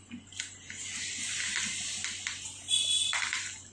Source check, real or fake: real